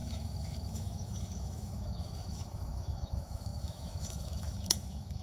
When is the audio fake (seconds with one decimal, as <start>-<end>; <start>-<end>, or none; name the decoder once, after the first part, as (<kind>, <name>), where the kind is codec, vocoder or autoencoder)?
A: 0.0-5.2 (autoencoder, DAC-VAE)